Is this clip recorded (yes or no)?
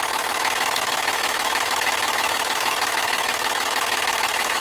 no